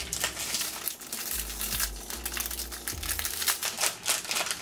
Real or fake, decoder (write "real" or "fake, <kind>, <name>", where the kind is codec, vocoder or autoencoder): real